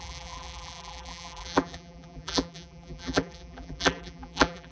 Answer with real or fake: fake